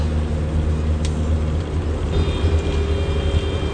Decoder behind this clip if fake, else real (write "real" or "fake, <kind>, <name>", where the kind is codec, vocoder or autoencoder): real